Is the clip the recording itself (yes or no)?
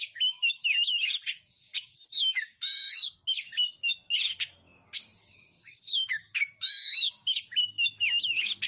no